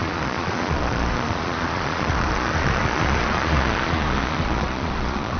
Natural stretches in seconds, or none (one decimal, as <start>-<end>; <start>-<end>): none